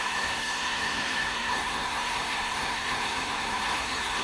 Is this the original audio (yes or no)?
no